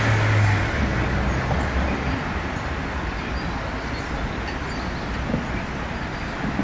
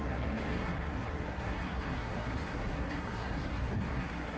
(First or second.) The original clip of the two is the first